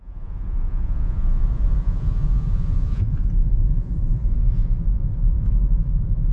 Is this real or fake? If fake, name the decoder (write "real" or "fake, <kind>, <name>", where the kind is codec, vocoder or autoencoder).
fake, vocoder, Vocos